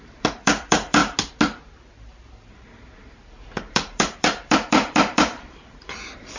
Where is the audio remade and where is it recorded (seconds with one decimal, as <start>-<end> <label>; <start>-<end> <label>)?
0.0-1.0 remade; 1.0-3.7 recorded; 3.7-6.4 remade